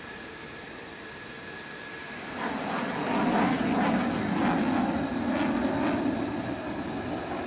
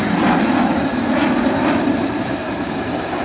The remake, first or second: second